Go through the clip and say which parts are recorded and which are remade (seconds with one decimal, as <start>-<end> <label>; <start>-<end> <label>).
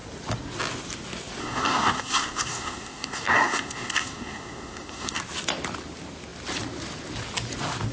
0.0-1.4 recorded; 1.4-5.2 remade; 5.2-7.9 recorded